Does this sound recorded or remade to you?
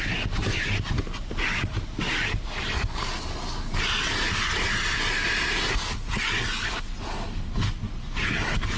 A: recorded